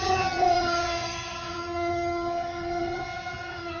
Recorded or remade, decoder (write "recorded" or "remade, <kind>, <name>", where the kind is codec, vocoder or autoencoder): remade, vocoder, HiFi-GAN